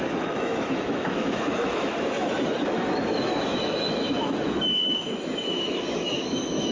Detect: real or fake fake